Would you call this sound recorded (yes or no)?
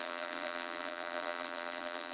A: no